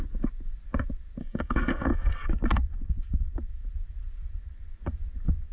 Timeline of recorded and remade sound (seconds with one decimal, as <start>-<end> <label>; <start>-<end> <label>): 0.0-1.2 recorded; 1.2-2.3 remade; 2.3-5.5 recorded